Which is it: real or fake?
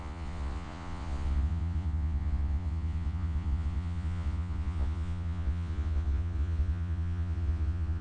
fake